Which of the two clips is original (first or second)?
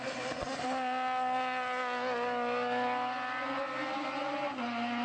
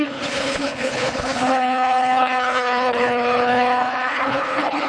first